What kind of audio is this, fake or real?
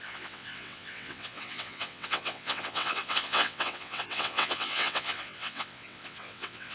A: fake